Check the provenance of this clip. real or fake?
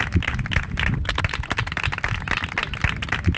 real